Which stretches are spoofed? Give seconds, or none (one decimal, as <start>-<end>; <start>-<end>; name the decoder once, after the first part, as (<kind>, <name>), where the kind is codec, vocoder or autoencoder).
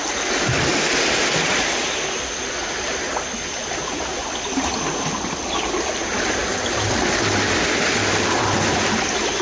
none